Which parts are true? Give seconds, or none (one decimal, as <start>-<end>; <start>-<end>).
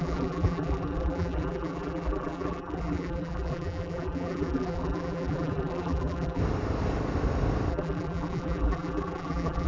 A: 6.4-7.7